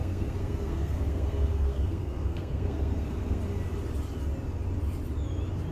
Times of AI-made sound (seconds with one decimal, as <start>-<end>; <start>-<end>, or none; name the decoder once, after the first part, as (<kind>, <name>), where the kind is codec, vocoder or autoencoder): 0.0-3.4 (codec, SNAC)